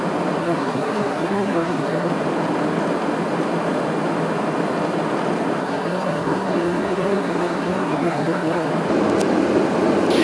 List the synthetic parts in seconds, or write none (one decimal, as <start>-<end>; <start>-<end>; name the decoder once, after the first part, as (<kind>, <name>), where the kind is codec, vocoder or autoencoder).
0.4-2.1 (codec, SNAC); 5.6-8.7